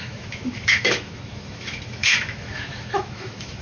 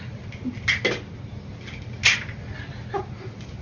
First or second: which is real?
second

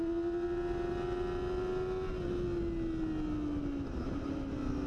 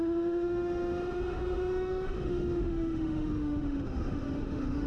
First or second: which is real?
first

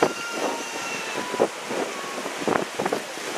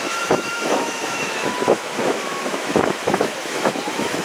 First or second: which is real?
first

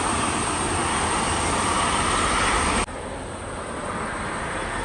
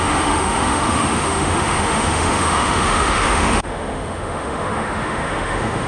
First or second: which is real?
first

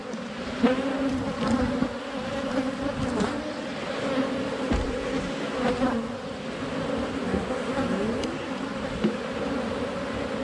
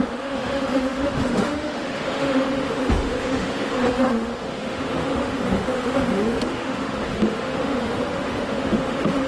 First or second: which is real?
first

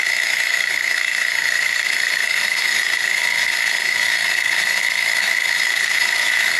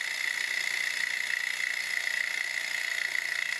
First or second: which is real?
second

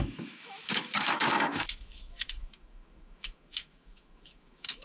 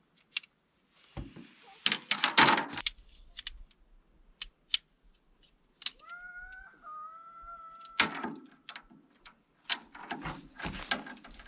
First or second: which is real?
second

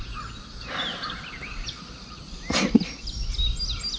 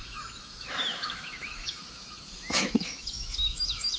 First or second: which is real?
first